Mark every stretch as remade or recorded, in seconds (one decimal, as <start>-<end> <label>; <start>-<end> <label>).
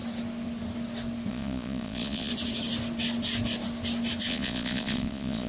0.0-1.3 recorded; 1.3-2.3 remade; 2.3-4.3 recorded; 4.3-5.5 remade